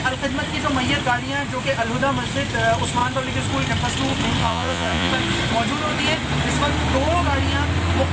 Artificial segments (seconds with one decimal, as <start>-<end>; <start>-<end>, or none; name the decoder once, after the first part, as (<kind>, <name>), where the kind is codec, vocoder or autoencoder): 4.4-5.1 (vocoder, Vocos)